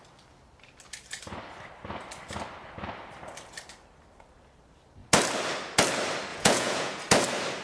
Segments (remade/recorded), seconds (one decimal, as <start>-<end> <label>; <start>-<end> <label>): 0.0-6.3 recorded; 6.3-7.0 remade; 7.0-7.6 recorded